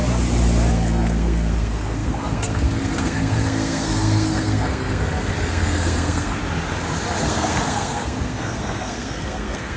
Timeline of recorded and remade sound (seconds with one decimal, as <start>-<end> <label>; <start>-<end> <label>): 0.0-0.7 recorded; 0.7-6.4 remade; 6.4-7.2 recorded; 7.2-9.8 remade